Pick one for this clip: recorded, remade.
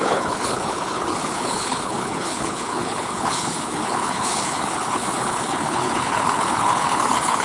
remade